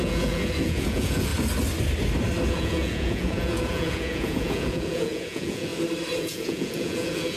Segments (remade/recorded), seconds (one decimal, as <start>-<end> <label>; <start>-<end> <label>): 0.0-1.3 remade; 1.3-2.5 recorded; 2.5-5.7 remade; 5.7-6.2 recorded; 6.2-7.4 remade